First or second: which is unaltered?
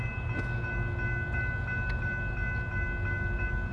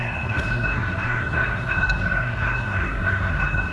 first